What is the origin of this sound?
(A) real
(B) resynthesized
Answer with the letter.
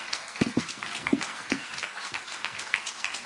B